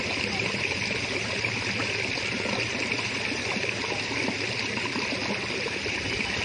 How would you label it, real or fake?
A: real